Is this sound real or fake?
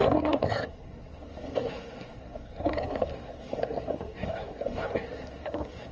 fake